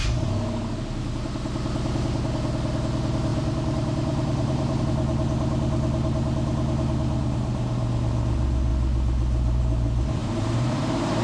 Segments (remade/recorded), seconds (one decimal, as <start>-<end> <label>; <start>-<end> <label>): 0.0-3.3 recorded; 3.3-4.8 remade; 4.8-10.2 recorded; 10.2-11.2 remade